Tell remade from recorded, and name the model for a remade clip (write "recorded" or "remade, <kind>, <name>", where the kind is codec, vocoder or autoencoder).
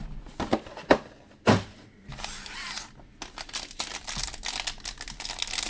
recorded